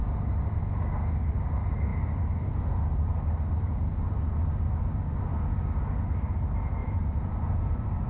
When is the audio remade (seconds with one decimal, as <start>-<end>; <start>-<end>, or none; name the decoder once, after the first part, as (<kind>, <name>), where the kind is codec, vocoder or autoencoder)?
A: 0.0-0.6 (vocoder, BigVGAN v2); 6.8-8.1